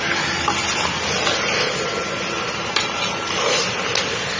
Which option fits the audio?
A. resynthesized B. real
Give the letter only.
B